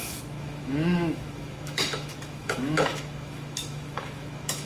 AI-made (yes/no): yes